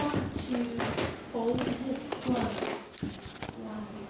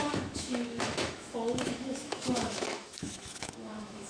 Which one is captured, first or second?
first